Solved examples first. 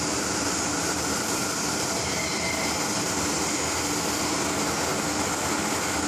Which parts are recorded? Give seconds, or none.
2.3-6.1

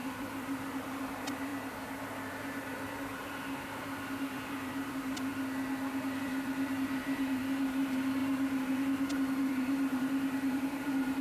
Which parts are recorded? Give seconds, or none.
1.5-2.3; 5.3-6.2